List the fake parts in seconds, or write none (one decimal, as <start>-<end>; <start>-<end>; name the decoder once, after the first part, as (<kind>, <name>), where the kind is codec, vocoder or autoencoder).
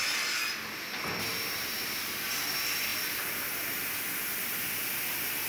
none